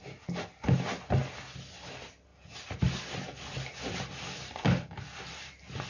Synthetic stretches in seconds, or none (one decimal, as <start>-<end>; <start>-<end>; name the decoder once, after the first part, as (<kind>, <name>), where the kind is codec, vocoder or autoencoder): 2.3-5.9 (vocoder, BigVGAN v2)